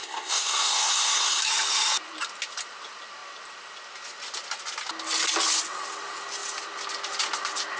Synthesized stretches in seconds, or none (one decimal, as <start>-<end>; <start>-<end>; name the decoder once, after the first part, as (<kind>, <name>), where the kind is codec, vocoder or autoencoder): 0.0-1.4 (codec, SNAC)